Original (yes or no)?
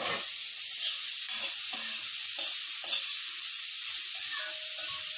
yes